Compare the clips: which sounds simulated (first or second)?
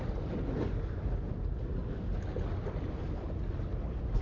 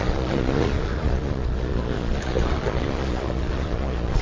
second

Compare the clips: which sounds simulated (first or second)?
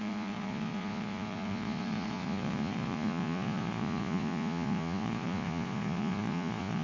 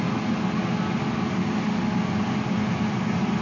first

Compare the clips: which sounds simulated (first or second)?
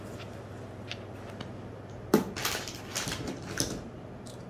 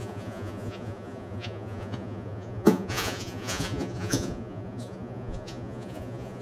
second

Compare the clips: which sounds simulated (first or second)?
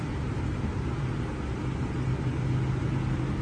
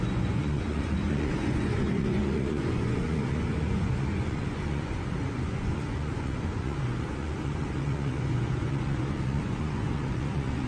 second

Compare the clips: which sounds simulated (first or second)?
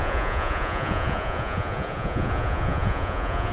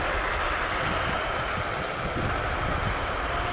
first